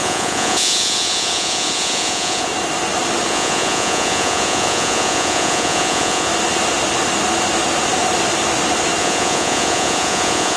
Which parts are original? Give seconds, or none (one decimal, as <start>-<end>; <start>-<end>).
2.5-3.3; 6.3-9.0